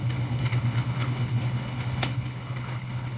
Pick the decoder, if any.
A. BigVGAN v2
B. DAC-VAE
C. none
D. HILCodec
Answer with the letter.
D